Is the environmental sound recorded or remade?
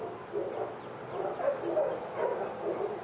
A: recorded